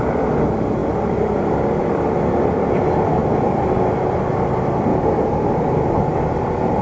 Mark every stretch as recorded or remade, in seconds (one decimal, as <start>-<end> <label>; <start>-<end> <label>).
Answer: 0.0-3.2 remade; 3.2-4.2 recorded; 4.2-4.9 remade; 4.9-6.8 recorded